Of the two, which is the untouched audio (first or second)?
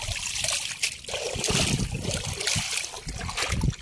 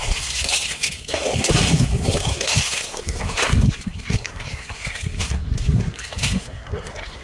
first